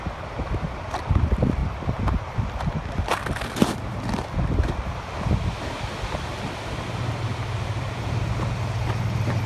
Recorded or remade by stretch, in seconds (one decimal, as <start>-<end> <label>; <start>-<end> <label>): 0.0-9.5 recorded